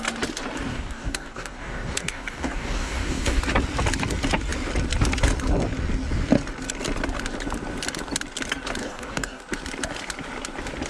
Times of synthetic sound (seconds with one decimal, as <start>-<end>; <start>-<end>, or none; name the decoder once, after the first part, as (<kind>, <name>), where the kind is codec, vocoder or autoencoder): 0.7-3.4 (codec, DAC); 8.8-9.4